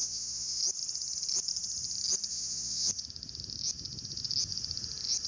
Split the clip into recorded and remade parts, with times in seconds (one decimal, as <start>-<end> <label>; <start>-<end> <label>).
0.0-0.6 remade; 0.6-2.3 recorded; 2.3-2.9 remade; 2.9-5.3 recorded